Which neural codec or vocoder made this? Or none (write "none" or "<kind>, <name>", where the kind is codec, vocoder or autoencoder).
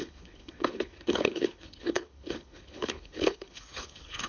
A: codec, HILCodec